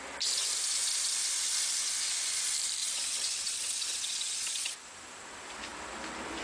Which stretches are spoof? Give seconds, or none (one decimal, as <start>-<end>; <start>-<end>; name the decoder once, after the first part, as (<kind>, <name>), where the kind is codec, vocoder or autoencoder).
2.8-4.7 (vocoder, WaveNeXt)